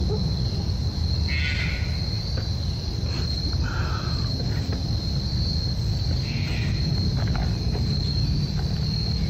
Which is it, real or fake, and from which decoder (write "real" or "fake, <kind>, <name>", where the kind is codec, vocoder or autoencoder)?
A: real